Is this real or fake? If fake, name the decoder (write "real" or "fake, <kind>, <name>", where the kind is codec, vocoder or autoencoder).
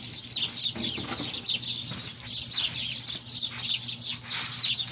real